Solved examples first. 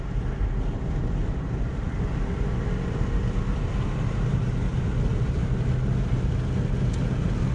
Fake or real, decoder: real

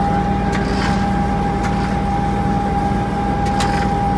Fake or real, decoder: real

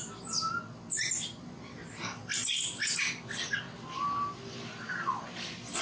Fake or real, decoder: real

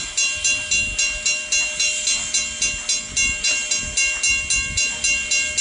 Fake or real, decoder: real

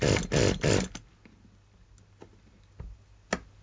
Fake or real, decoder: real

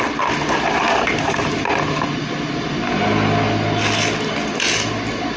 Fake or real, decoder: real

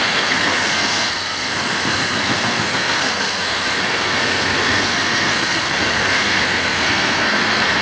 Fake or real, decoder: fake, codec, SNAC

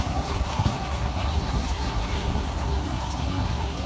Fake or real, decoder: fake, codec, SNAC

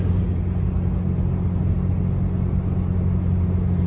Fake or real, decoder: real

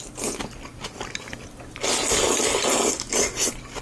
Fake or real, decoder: real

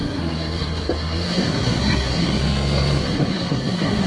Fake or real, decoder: fake, codec, SNAC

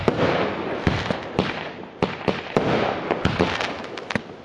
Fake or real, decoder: real